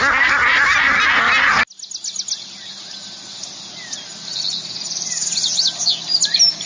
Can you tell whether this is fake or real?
real